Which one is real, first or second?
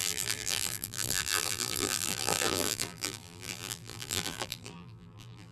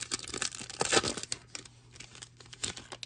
second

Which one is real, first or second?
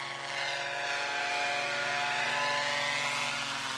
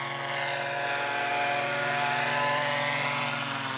first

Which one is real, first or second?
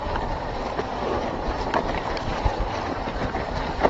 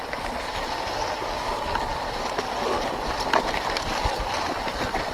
second